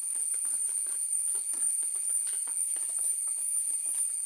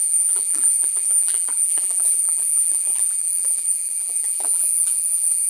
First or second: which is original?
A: first